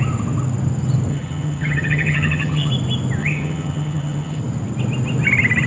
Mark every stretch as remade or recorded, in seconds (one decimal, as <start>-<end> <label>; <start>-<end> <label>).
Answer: 0.0-1.1 recorded; 1.1-2.7 remade; 2.7-3.2 recorded; 3.2-4.4 remade; 4.4-5.7 recorded